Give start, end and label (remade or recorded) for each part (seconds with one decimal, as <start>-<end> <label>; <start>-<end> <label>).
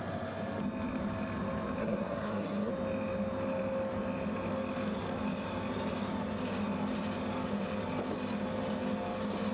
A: 0.0-1.8 recorded; 1.8-2.7 remade; 2.7-9.5 recorded